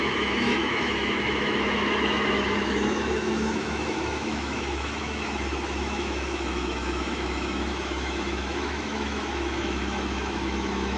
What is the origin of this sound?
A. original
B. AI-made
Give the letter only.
B